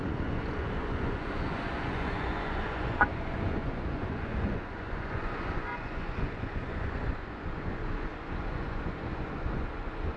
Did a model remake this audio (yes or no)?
yes